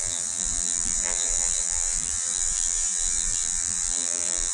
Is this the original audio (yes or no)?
no